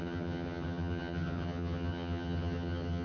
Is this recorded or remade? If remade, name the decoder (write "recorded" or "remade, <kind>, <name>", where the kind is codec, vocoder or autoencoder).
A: remade, vocoder, HiFi-GAN